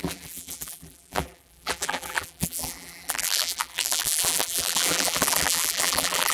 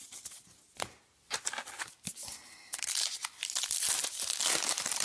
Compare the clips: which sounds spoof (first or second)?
first